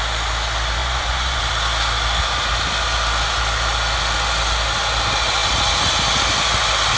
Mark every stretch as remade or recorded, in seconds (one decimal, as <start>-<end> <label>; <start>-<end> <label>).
0.0-0.8 recorded; 0.8-1.4 remade; 1.4-7.0 recorded